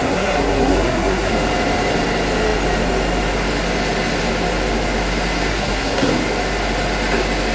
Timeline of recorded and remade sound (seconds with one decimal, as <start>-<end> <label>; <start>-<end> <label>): 0.0-1.3 remade; 1.3-5.5 recorded; 5.5-6.1 remade; 6.1-7.5 recorded